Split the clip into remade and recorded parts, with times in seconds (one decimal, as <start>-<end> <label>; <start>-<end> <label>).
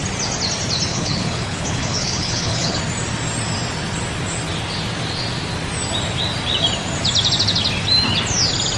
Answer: 0.0-0.9 recorded; 0.9-2.8 remade; 2.8-8.8 recorded